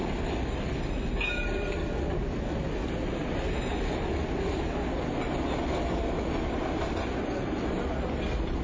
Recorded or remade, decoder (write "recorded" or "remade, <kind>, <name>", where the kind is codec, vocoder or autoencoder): recorded